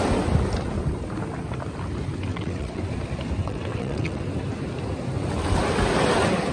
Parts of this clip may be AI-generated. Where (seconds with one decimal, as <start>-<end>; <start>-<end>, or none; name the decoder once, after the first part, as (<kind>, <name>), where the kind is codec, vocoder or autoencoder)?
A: 2.3-2.8 (vocoder, WaveNeXt); 3.4-4.2